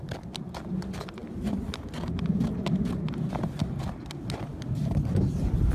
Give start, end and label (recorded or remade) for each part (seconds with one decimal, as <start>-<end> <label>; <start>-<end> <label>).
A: 0.0-5.7 recorded